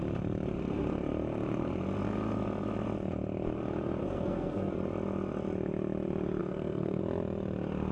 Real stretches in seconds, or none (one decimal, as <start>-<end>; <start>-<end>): 0.0-4.0; 4.7-6.4; 7.0-7.9